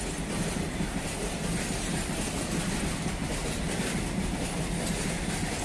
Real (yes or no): yes